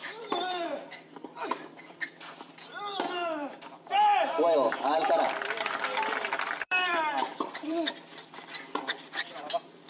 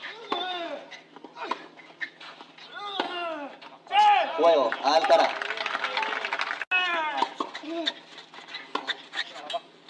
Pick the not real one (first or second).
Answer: first